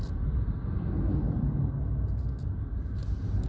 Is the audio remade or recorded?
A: recorded